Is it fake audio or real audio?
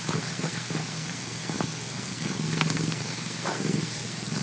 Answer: fake